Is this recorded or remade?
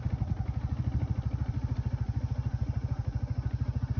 recorded